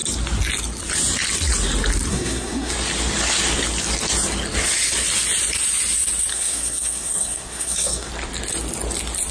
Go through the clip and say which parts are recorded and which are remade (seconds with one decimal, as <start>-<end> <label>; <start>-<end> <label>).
0.0-2.1 recorded; 2.1-2.7 remade; 2.7-6.3 recorded; 6.3-8.1 remade; 8.1-9.3 recorded